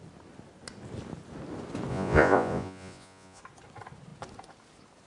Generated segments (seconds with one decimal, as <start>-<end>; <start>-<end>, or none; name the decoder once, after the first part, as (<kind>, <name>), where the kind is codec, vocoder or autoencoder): 1.9-3.4 (vocoder, Vocos)